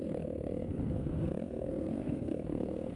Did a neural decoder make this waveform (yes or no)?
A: yes